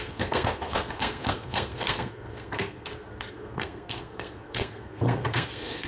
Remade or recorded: remade